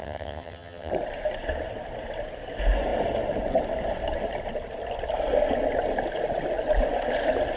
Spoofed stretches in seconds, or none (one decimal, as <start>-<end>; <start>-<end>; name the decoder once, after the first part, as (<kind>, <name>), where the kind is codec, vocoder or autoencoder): 0.0-0.9 (vocoder, HiFi-GAN)